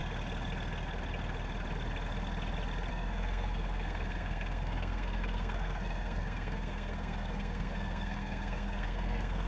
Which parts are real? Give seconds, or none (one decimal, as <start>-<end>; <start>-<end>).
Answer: 0.0-2.9